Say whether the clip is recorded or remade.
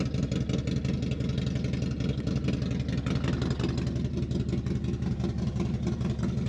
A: recorded